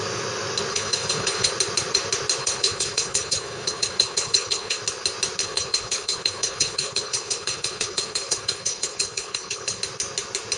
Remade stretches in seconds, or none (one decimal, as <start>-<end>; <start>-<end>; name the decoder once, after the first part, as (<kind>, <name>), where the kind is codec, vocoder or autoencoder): 0.7-1.5 (codec, HILCodec); 2.4-4.8; 5.4-9.8